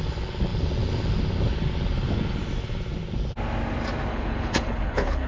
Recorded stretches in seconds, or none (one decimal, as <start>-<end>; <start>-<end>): 0.0-4.1